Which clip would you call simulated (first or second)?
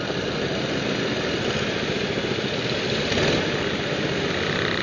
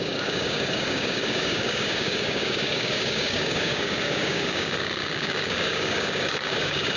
second